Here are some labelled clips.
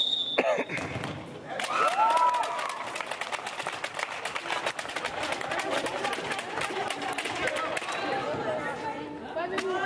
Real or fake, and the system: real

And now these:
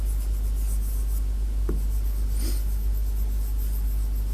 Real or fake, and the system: fake, vocoder, BigVGAN v2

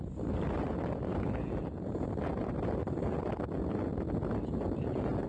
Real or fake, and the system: real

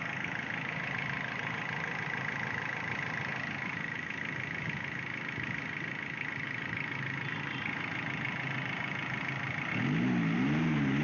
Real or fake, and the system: real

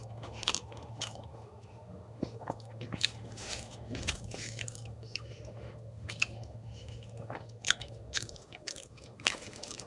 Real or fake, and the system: fake, autoencoder, DAC-VAE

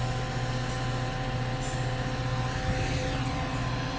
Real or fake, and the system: real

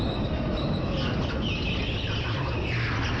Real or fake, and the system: real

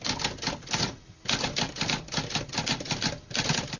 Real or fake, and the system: real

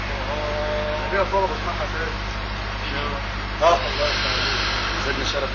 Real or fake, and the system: real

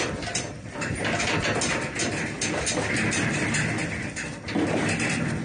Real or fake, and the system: real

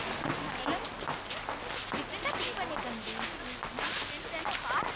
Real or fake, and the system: real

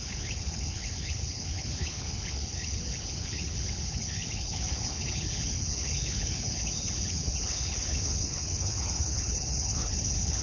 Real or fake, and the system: fake, codec, HILCodec